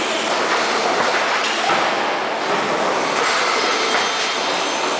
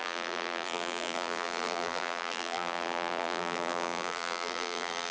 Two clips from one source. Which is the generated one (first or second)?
second